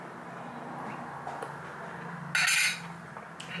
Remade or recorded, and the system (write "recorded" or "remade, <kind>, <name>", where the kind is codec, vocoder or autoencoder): recorded